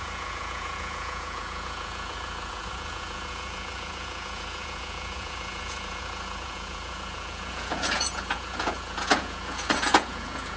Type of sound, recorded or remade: remade